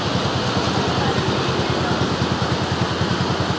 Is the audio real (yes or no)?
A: yes